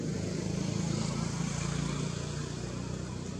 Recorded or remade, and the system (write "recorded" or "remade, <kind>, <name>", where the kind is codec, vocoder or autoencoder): recorded